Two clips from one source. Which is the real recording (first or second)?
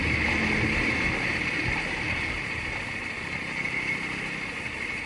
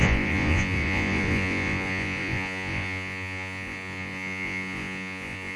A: first